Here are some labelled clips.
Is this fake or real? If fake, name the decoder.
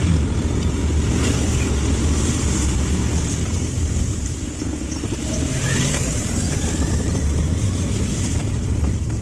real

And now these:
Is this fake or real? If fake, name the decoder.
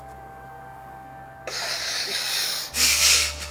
fake, codec, DAC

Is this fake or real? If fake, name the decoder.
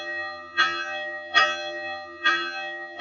fake, vocoder, HiFi-GAN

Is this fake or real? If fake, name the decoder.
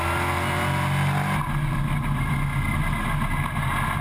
real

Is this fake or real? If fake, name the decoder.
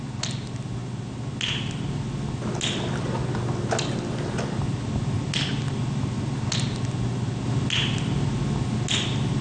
real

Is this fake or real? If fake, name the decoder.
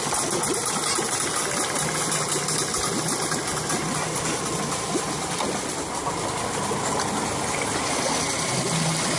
real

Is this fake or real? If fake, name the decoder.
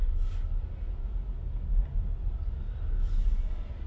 real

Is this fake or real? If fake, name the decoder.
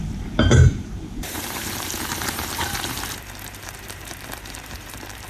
fake, vocoder, BigVGAN v2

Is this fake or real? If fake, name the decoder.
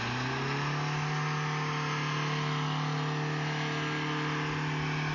real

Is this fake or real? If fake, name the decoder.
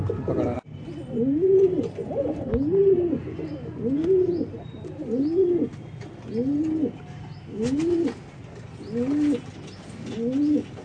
real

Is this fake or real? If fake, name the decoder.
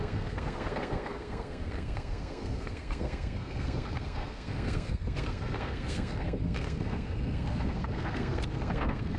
fake, codec, SNAC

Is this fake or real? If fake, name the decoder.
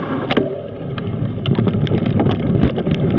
real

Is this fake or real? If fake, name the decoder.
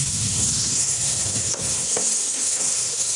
fake, codec, SNAC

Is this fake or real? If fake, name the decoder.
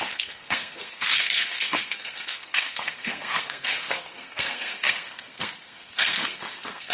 fake, codec, SNAC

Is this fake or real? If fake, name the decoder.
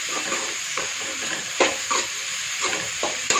fake, vocoder, BigVGAN v2